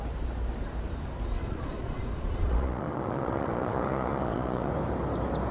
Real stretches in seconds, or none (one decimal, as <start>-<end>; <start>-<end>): 0.0-1.4; 4.7-5.5